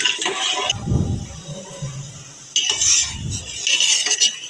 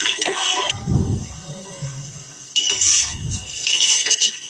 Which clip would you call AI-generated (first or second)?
second